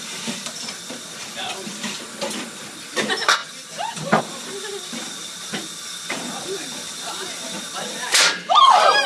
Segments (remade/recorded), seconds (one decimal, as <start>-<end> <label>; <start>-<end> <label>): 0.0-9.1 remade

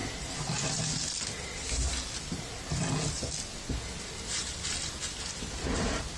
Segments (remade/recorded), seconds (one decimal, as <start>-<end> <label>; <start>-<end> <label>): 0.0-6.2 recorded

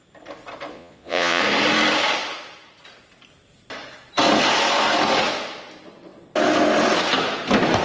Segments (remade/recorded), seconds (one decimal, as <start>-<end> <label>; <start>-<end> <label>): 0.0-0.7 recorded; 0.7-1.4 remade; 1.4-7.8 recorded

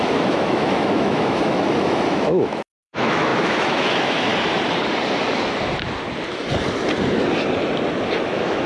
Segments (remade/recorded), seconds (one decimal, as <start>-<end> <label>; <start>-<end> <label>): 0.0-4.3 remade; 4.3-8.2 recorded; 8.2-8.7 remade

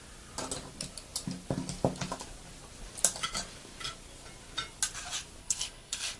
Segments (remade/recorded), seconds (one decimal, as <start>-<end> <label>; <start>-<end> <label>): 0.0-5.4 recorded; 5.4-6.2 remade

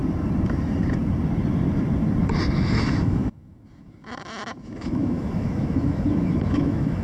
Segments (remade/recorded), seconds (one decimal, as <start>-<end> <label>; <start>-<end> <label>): 0.0-2.6 recorded; 2.6-7.0 remade